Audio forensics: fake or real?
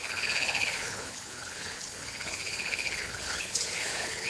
fake